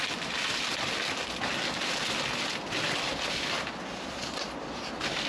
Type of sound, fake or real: fake